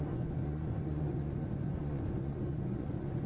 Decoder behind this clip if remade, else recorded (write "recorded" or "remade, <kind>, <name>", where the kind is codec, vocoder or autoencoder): remade, vocoder, Vocos